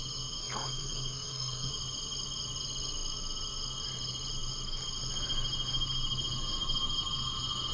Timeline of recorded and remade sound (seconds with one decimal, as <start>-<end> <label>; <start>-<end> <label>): 0.0-0.4 recorded; 0.4-1.7 remade; 1.7-7.7 recorded